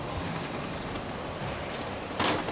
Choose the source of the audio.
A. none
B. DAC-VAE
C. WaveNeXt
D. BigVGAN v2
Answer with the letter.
A